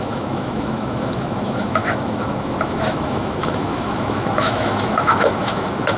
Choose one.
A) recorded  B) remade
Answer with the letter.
B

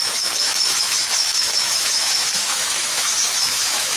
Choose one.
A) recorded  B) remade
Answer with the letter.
B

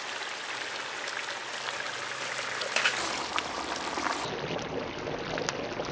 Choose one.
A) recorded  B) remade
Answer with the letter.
A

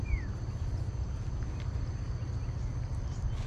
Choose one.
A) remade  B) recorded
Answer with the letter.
B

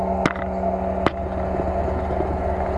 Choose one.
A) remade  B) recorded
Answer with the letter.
B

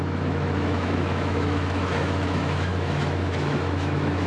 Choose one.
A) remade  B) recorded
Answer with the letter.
A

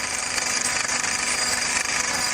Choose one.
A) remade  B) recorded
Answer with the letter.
B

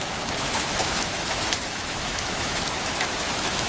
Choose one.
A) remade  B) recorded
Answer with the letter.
A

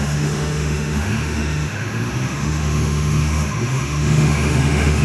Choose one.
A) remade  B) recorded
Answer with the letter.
A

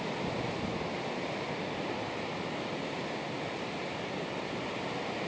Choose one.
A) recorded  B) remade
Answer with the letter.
A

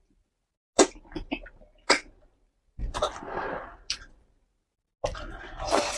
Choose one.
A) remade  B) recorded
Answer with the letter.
B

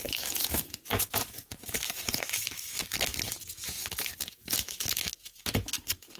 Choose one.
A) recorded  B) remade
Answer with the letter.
B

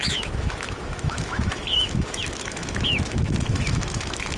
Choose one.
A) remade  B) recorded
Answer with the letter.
A